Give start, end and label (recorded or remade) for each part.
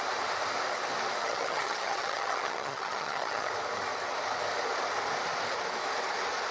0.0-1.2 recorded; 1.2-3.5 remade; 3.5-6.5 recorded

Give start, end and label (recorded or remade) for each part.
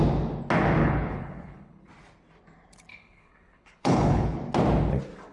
0.0-0.8 recorded; 0.8-1.9 remade; 1.9-2.9 recorded; 2.9-4.4 remade; 4.4-5.3 recorded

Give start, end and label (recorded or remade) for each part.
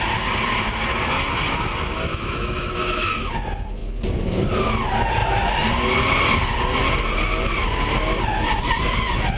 0.0-2.1 recorded; 2.1-3.3 remade; 3.3-9.4 recorded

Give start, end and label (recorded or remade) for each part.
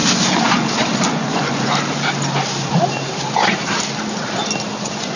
0.0-1.1 recorded; 1.1-1.7 remade; 1.7-4.8 recorded; 4.8-5.2 remade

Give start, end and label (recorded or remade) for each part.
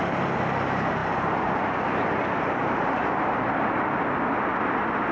0.0-5.1 recorded